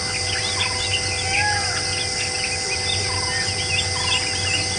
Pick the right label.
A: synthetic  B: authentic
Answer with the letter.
B